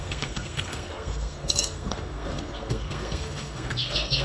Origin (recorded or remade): remade